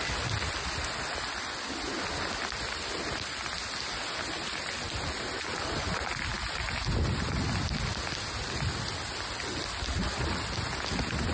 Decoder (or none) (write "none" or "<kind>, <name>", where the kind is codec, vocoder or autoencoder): none